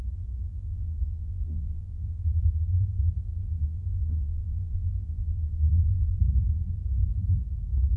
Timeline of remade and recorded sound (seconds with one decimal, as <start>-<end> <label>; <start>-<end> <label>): 0.0-0.5 recorded; 0.5-2.2 remade; 2.2-3.6 recorded; 3.6-6.2 remade; 6.2-8.0 recorded